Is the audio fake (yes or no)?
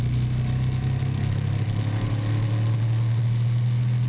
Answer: no